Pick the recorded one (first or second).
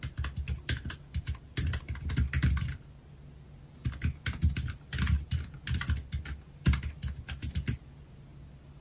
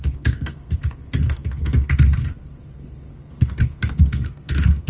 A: first